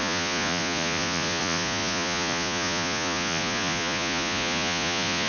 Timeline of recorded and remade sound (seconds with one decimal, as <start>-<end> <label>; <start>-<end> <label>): 0.0-5.3 remade